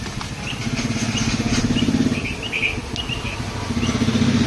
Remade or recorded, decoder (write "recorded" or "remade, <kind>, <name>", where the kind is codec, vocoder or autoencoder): recorded